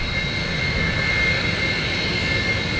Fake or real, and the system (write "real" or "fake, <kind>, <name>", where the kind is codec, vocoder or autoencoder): real